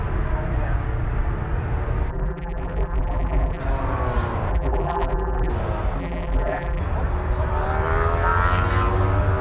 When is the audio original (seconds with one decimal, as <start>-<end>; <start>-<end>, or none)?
0.0-2.1; 3.6-4.5; 5.5-6.0; 6.8-9.4